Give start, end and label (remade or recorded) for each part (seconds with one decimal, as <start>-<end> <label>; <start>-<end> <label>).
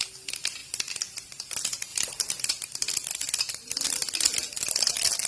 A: 0.0-5.3 recorded